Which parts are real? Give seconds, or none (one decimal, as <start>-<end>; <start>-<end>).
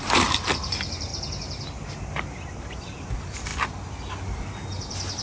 1.1-2.8; 3.5-4.6